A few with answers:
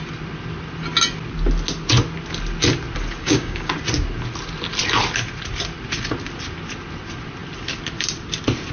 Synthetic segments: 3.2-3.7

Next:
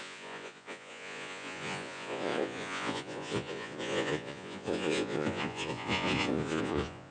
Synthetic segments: 0.0-7.1

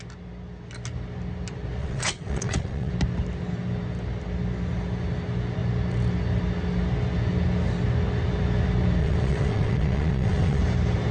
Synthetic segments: 1.8-2.9; 9.0-10.6

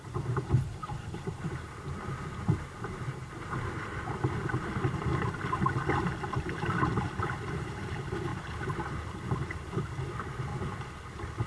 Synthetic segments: 0.0-0.8; 4.1-11.5